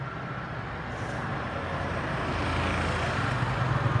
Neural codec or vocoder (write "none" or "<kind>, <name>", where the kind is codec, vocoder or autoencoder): none